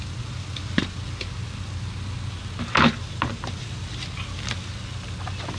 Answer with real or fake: real